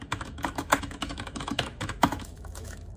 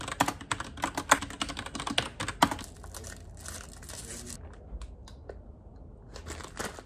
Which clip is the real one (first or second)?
second